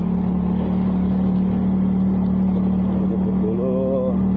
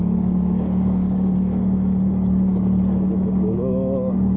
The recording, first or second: first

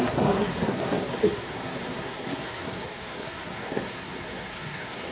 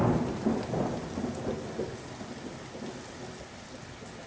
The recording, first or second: second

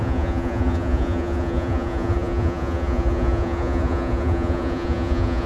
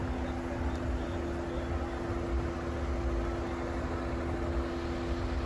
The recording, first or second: second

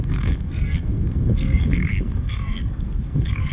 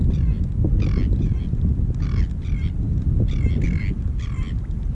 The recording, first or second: second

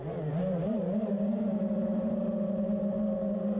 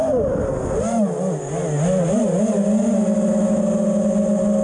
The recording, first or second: second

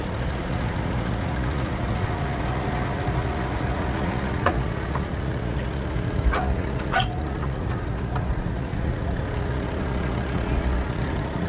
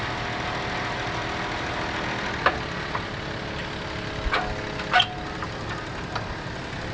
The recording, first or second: second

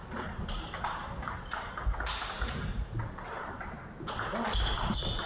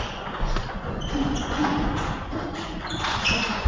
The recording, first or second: first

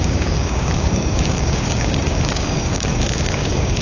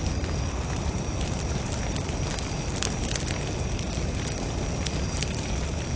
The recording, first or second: second